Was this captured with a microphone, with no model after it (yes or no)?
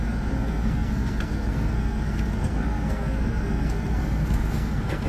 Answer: no